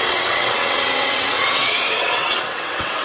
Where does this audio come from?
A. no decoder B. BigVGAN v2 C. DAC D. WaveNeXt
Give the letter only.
D